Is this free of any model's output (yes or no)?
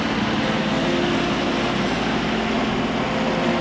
yes